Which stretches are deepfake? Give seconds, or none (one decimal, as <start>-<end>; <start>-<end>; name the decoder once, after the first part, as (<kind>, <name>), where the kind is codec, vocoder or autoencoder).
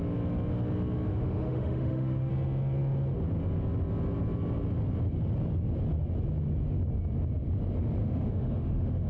1.1-2.3 (autoencoder, DAC-VAE); 8.0-9.1